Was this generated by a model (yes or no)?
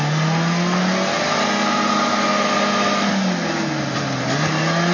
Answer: no